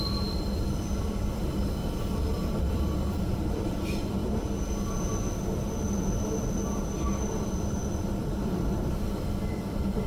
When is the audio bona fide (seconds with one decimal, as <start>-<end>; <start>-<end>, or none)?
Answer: 4.2-6.8